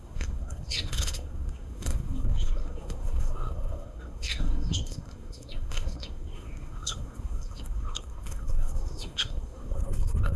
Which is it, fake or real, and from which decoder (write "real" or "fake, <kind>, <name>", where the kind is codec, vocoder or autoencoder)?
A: fake, codec, SNAC